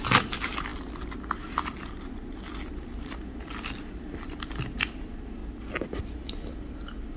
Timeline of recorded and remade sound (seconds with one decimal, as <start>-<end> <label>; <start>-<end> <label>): 0.0-7.2 recorded